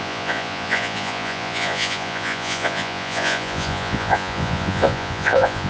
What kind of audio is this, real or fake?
fake